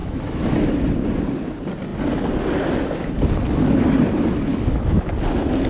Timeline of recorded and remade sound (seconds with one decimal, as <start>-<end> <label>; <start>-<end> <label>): 0.0-0.7 remade; 0.7-4.5 recorded; 4.5-5.1 remade; 5.1-5.7 recorded

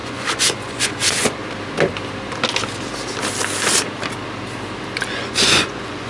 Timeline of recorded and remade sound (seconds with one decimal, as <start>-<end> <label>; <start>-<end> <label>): 0.0-1.4 remade; 1.4-5.1 recorded; 5.1-6.1 remade

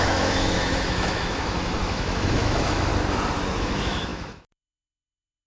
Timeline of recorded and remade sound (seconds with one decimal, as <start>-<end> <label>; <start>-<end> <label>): 0.0-2.9 remade; 2.9-3.6 recorded; 3.6-5.5 remade

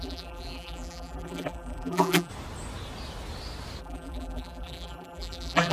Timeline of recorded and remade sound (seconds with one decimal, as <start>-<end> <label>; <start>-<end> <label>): 0.0-2.3 remade; 2.3-3.8 recorded; 3.8-5.7 remade

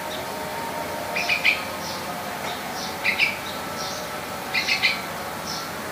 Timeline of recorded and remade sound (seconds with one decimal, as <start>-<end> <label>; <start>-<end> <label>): 0.0-0.5 recorded; 0.5-2.7 remade; 2.7-3.1 recorded; 3.1-4.7 remade; 4.7-5.9 recorded

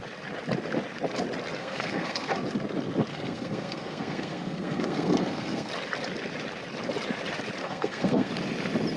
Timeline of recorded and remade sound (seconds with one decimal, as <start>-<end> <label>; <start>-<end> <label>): 0.0-1.6 recorded; 1.6-2.3 remade; 2.3-3.1 recorded; 3.1-5.7 remade; 5.7-7.6 recorded; 7.6-8.3 remade; 8.3-9.0 recorded

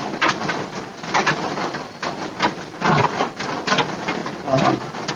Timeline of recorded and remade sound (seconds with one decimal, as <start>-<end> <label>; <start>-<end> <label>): 0.0-5.2 recorded

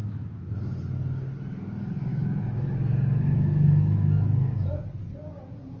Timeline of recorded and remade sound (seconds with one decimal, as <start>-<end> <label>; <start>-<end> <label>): 0.0-0.5 remade; 0.5-2.1 recorded; 2.1-4.8 remade; 4.8-5.8 recorded